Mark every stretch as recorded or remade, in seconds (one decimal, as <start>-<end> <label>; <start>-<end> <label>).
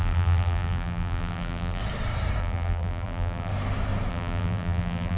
0.0-1.8 remade; 1.8-2.4 recorded; 2.4-3.5 remade; 3.5-4.1 recorded; 4.1-5.2 remade